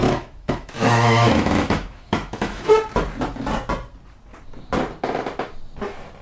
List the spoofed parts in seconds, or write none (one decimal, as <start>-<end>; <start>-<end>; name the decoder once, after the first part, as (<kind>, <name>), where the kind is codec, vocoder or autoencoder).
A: 0.0-2.7 (autoencoder, DAC-VAE)